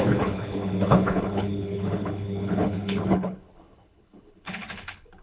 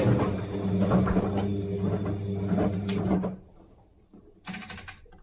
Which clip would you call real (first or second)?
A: second